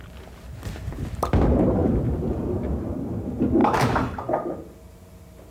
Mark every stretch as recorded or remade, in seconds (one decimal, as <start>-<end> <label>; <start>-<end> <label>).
0.0-5.5 recorded